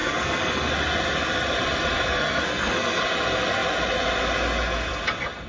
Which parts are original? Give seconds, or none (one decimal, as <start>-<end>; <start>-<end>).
0.7-2.1; 3.0-5.5

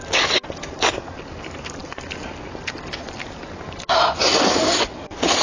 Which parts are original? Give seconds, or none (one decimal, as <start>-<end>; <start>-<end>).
0.0-5.4

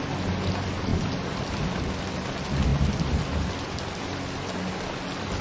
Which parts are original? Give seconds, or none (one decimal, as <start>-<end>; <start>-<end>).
0.0-2.7; 4.0-5.4

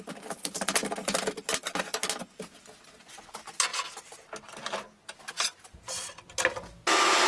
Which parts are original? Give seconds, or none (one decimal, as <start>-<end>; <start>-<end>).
0.0-7.3

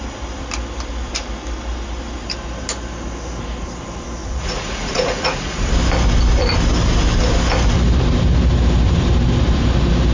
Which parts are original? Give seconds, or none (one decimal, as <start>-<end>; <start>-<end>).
0.0-4.2; 5.7-10.1

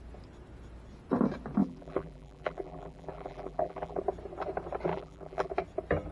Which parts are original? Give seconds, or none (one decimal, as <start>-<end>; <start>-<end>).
0.0-1.6; 4.0-4.9; 5.5-6.1

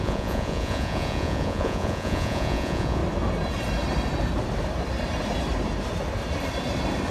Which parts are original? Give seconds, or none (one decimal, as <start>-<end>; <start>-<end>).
3.0-7.1

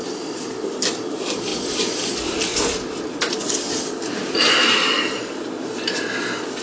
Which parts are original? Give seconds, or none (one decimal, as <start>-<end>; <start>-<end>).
0.0-6.6